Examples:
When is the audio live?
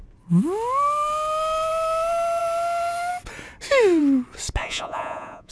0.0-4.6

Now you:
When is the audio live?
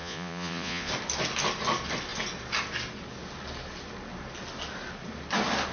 0.9-5.7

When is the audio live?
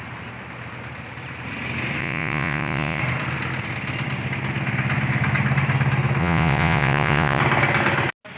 0.0-2.0; 3.0-6.2; 7.4-8.4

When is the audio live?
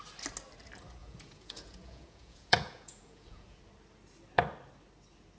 0.0-1.0; 3.6-5.4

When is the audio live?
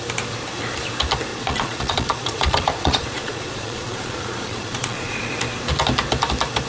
0.0-1.3; 5.3-6.7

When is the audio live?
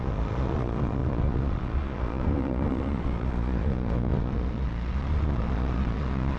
none